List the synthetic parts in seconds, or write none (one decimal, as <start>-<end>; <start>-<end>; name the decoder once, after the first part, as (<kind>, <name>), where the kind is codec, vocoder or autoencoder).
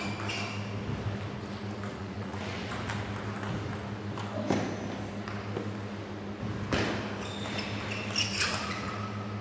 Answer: 1.9-2.9 (vocoder, Vocos); 8.3-8.9